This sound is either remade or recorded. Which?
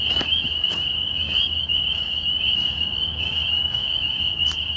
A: remade